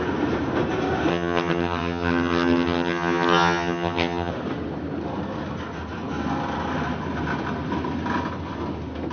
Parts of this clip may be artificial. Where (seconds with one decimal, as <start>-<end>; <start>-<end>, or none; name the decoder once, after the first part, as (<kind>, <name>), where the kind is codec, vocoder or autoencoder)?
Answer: 1.1-4.3 (vocoder, HiFi-GAN)